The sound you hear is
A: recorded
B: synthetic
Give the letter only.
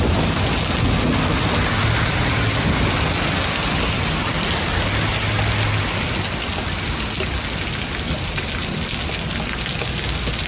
A